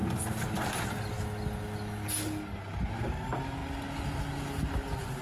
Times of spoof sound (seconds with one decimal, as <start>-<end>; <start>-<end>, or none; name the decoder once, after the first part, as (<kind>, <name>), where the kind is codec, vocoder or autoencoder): none